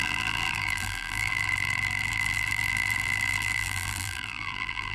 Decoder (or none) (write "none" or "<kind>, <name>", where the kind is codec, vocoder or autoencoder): vocoder, BigVGAN v2